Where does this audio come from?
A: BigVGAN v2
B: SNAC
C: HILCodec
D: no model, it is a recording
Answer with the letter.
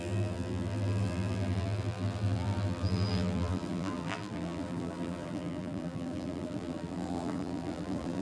A